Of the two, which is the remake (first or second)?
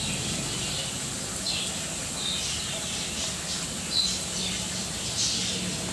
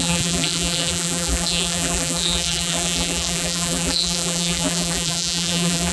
second